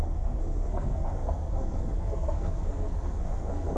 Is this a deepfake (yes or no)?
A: yes